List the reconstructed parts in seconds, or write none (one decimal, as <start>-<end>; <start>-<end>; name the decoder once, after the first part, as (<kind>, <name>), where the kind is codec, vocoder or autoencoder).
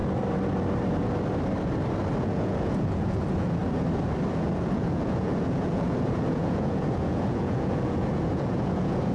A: 2.2-3.6 (vocoder, Vocos); 4.3-9.1